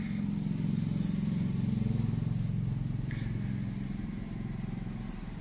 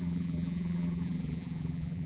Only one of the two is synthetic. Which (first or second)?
second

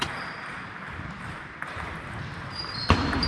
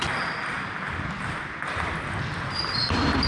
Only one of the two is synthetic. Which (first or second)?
first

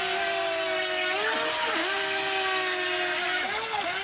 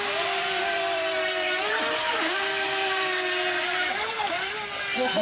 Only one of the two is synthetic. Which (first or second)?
second